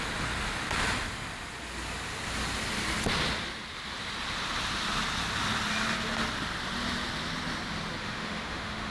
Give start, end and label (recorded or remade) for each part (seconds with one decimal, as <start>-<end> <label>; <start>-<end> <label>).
0.0-8.0 recorded; 8.0-8.9 remade